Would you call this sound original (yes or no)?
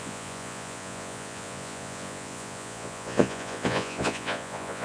no